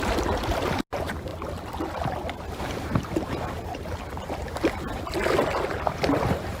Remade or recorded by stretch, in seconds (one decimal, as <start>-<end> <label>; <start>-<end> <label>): 0.0-6.6 recorded